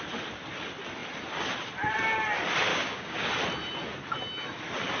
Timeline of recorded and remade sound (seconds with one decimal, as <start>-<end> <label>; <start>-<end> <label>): 0.0-2.7 recorded; 2.7-3.3 remade; 3.3-5.0 recorded